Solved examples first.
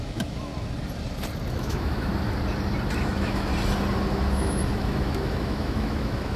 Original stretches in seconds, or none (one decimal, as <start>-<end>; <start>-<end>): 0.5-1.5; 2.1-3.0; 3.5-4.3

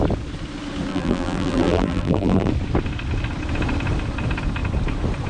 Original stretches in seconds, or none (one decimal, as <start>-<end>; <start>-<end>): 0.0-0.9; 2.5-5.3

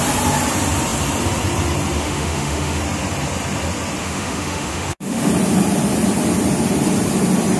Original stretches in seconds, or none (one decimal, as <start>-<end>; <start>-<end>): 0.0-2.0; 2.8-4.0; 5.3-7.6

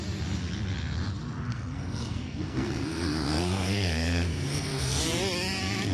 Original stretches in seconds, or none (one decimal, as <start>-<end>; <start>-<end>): 0.0-1.5; 5.0-5.9